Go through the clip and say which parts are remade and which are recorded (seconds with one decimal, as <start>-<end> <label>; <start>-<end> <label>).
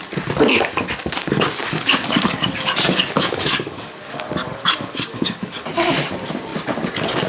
0.0-1.2 recorded; 1.2-5.6 remade; 5.6-7.3 recorded